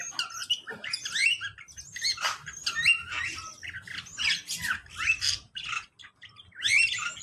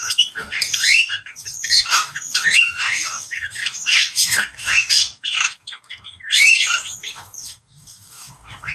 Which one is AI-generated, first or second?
second